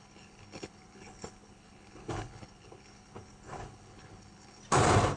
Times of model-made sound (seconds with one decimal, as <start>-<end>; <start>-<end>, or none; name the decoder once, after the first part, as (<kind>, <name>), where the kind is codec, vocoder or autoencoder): 0.0-4.6 (codec, HILCodec)